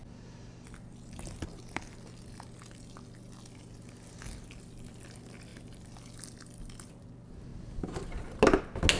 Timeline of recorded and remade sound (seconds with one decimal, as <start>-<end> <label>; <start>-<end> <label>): 0.0-9.0 recorded